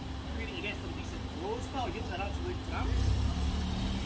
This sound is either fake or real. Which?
real